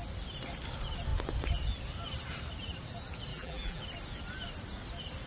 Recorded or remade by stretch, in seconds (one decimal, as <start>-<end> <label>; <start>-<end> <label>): 0.0-3.3 recorded; 3.3-3.8 remade; 3.8-5.3 recorded